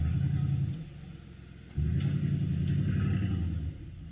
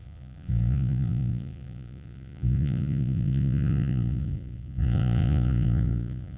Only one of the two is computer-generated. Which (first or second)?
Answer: second